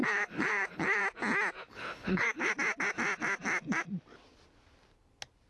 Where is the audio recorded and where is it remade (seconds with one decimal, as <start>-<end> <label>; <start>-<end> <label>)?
0.0-1.0 remade; 1.0-1.7 recorded; 1.7-2.5 remade; 2.5-5.5 recorded